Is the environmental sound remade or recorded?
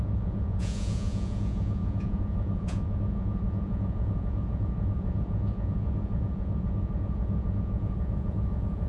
remade